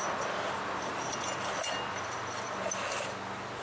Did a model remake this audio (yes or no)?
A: no